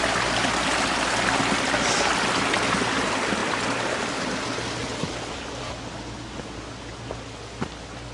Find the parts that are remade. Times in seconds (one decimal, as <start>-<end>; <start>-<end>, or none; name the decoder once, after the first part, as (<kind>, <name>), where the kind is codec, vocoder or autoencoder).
3.4-3.9 (vocoder, BigVGAN v2); 4.8-5.6